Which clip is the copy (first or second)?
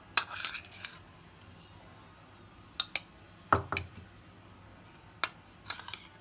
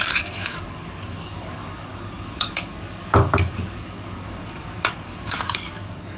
second